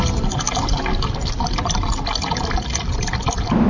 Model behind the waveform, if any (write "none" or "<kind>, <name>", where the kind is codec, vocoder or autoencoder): none